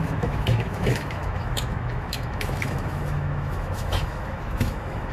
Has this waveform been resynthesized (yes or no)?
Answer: yes